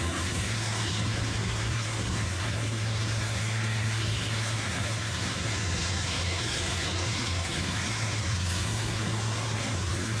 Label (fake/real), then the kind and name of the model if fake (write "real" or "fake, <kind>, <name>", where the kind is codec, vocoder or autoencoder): fake, codec, SNAC